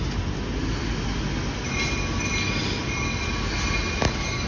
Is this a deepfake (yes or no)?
no